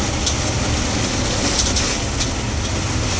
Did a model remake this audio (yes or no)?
no